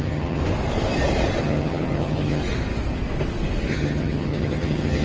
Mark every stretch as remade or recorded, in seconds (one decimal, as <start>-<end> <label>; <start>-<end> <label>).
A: 0.0-0.4 remade; 0.4-1.4 recorded; 1.4-2.4 remade; 2.4-3.7 recorded; 3.7-5.0 remade